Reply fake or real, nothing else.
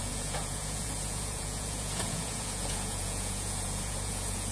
fake